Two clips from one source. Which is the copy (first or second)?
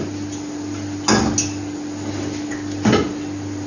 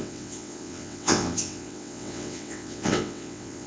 second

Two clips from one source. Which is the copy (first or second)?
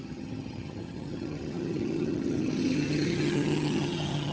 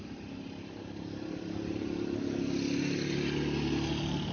first